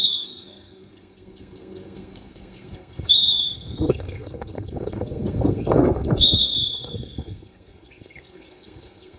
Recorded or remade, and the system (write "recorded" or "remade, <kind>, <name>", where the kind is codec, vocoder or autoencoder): remade, codec, SNAC